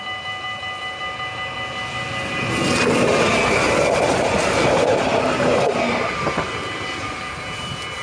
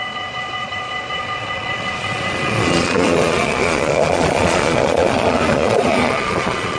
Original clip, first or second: first